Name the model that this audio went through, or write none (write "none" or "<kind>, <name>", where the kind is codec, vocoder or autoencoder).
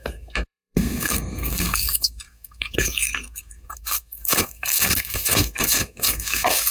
codec, SNAC